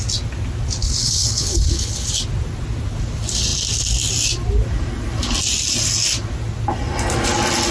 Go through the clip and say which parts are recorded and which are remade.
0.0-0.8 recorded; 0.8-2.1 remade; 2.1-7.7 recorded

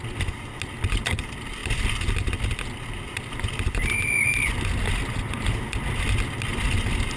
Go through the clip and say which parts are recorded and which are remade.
0.0-7.2 recorded

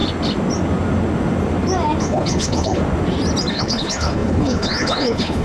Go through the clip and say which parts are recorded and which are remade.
0.0-2.0 recorded; 2.0-2.8 remade; 2.8-3.5 recorded; 3.5-5.4 remade